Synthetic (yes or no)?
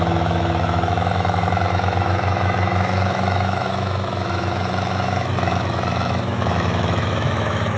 yes